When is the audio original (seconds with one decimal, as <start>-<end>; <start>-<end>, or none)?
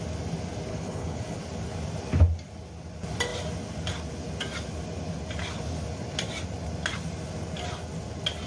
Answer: 0.0-0.7; 1.4-8.5